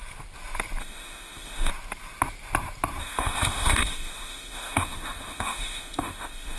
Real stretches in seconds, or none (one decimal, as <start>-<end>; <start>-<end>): 0.0-0.8; 1.7-3.0